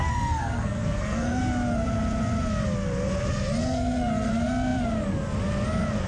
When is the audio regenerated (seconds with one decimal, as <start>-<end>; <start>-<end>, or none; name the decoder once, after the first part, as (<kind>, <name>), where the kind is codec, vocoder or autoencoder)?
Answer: 0.0-1.4 (codec, SNAC); 3.6-4.3